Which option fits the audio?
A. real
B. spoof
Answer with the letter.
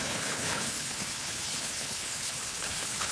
B